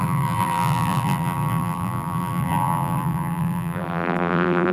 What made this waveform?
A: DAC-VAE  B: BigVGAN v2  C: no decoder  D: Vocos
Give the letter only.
B